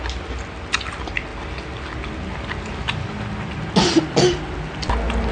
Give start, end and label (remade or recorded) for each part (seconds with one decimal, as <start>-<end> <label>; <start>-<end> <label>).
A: 0.0-5.3 recorded